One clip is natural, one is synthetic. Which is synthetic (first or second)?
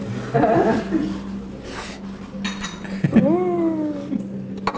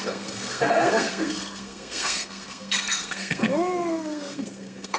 second